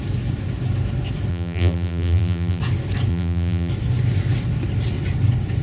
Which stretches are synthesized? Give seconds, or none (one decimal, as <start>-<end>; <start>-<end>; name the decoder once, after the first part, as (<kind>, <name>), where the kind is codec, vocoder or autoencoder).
1.3-2.6 (vocoder, BigVGAN v2); 3.1-3.7